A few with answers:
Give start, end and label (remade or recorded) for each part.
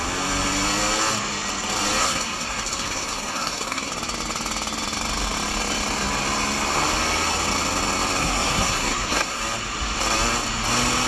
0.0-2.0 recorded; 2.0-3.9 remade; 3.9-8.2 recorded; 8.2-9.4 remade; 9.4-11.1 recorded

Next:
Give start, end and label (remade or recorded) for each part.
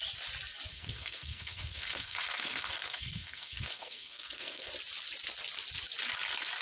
0.0-0.7 recorded; 0.7-4.7 remade; 4.7-6.6 recorded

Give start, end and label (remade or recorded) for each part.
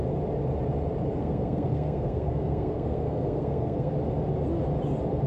0.0-1.2 recorded; 1.2-3.9 remade; 3.9-5.3 recorded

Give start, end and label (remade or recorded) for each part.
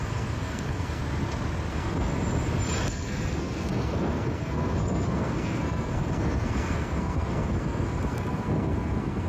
0.0-1.0 remade; 1.0-1.7 recorded; 1.7-2.1 remade; 2.1-2.9 recorded; 2.9-9.3 remade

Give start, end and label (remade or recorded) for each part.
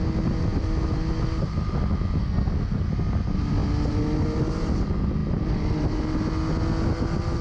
0.0-2.2 recorded; 2.2-2.9 remade; 2.9-7.4 recorded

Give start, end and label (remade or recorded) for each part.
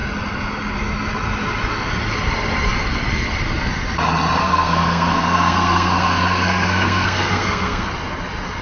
0.0-4.4 recorded; 4.4-7.9 remade; 7.9-8.6 recorded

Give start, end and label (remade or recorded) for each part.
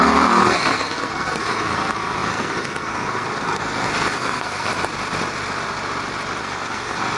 0.0-4.7 remade; 4.7-6.4 recorded; 6.4-7.2 remade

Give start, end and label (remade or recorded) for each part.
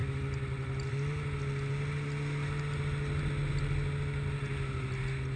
0.0-5.4 recorded